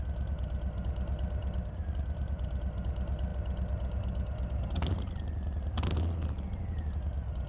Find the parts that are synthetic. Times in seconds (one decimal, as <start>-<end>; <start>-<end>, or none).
1.4-2.6; 3.3-4.6